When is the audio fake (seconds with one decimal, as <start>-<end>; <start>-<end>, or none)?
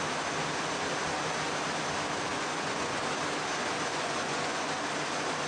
2.3-3.0; 3.6-4.7